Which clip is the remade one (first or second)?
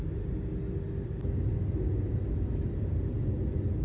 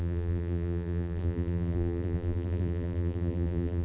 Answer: second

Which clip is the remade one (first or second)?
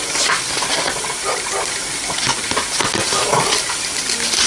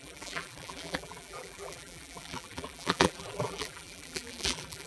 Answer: second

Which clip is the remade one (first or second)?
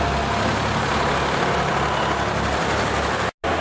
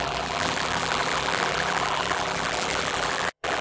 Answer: second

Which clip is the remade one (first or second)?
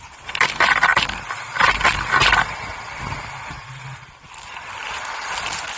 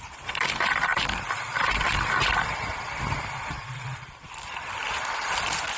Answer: second